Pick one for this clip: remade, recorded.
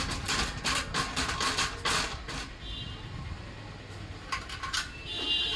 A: recorded